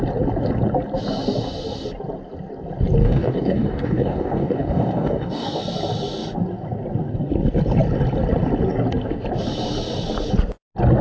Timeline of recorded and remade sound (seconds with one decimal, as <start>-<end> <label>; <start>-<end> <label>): 0.0-3.0 recorded; 3.0-5.6 remade; 5.6-11.0 recorded